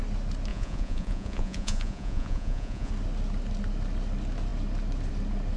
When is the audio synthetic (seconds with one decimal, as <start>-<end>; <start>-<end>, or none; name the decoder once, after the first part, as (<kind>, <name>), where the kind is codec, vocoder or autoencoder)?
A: 0.5-2.9 (vocoder, Vocos)